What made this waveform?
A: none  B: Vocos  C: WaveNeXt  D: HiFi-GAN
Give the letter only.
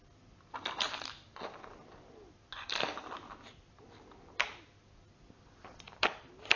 A